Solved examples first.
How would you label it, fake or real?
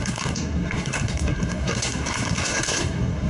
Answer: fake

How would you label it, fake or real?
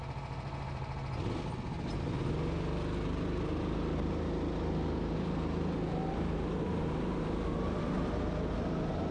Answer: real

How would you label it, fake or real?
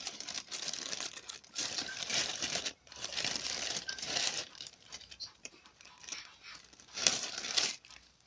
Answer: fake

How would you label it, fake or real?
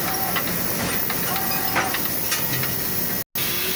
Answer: real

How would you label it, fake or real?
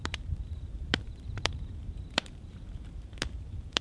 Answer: fake